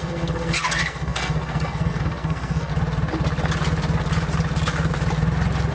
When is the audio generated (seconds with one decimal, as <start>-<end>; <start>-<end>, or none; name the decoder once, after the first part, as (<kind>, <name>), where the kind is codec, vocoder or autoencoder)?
0.0-2.7 (codec, SNAC)